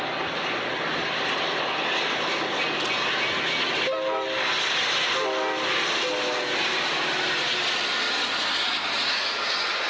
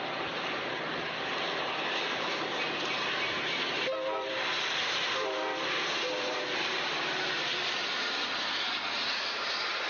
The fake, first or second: second